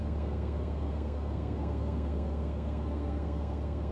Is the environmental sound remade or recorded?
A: remade